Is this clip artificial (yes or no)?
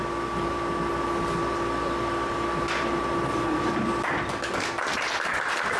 no